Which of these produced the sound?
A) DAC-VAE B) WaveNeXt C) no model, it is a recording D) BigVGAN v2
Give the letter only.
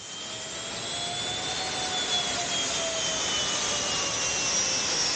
C